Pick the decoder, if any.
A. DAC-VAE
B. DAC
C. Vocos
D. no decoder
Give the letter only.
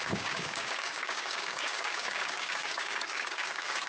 B